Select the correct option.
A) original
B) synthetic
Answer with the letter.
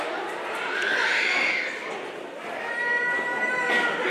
A